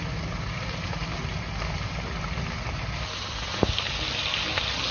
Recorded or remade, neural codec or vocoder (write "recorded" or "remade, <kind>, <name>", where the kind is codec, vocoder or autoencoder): recorded